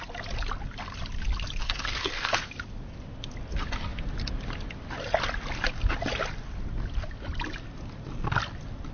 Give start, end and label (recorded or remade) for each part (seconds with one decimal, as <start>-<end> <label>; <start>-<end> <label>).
0.0-1.6 recorded; 1.6-2.5 remade; 2.5-8.9 recorded

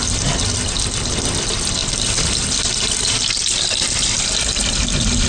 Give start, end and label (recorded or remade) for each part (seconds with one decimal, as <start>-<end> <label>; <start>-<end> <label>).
0.0-5.3 recorded

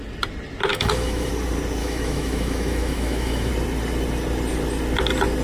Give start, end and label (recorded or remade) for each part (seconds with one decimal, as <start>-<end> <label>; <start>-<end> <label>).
0.0-0.7 recorded; 0.7-1.3 remade; 1.3-1.8 recorded; 1.8-3.5 remade; 3.5-5.4 recorded

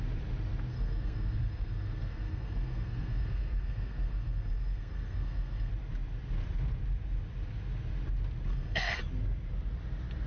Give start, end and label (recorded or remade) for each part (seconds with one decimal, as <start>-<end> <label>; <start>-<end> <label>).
0.0-0.7 recorded; 0.7-5.7 remade; 5.7-8.5 recorded; 8.5-9.0 remade; 9.0-10.3 recorded

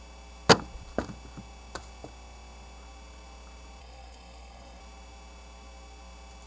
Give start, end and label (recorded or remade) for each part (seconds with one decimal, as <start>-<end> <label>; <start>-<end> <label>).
0.0-3.8 recorded; 3.8-4.8 remade; 4.8-6.5 recorded